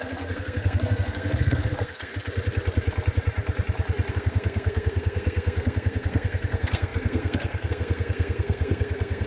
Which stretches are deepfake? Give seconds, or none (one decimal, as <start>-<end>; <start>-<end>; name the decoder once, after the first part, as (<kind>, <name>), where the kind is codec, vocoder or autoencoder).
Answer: 0.0-2.1 (codec, SNAC); 4.1-9.3